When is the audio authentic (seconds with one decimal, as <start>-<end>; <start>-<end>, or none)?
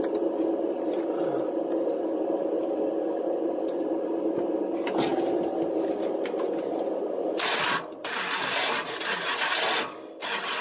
0.0-10.6